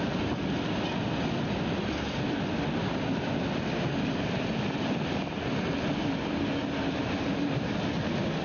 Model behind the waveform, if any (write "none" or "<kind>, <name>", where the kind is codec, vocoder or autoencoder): none